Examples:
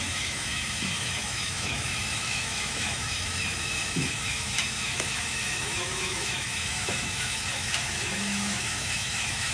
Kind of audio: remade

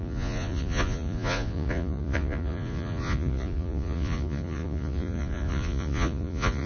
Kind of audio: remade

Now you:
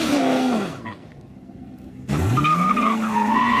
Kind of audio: remade